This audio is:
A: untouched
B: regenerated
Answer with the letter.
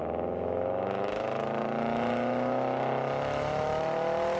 B